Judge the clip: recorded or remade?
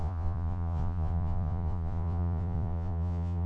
remade